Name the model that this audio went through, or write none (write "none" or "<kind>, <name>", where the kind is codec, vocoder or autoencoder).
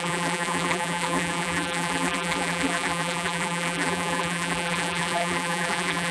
vocoder, BigVGAN v2